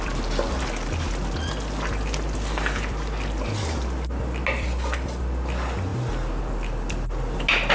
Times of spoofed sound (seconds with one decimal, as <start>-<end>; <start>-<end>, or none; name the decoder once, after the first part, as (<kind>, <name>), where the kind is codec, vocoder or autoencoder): none